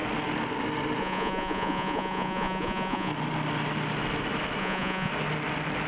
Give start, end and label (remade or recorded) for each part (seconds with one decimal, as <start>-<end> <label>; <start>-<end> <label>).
0.0-1.0 recorded; 1.0-3.1 remade; 3.1-4.6 recorded; 4.6-5.1 remade; 5.1-5.9 recorded